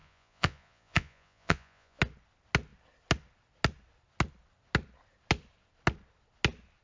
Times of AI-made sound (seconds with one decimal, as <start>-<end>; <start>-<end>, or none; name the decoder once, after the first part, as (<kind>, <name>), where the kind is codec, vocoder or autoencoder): 0.0-2.0 (vocoder, Vocos)